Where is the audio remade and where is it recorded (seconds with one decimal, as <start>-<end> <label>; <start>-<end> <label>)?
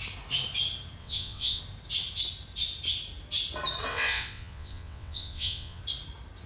0.0-1.0 recorded; 1.0-1.6 remade; 1.6-3.9 recorded; 3.9-5.8 remade; 5.8-6.5 recorded